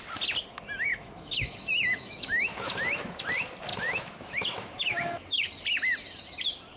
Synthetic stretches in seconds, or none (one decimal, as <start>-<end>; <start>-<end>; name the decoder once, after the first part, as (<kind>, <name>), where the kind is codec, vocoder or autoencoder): 0.9-3.3 (autoencoder, DAC-VAE); 3.7-5.5